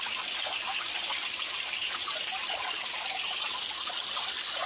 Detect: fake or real real